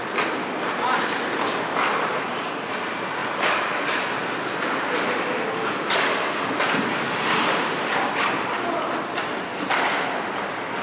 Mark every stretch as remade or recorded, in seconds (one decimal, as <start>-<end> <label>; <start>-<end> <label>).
0.0-10.8 recorded